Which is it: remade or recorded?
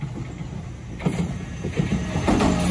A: recorded